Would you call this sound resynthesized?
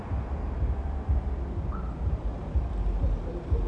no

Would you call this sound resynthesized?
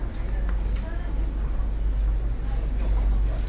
no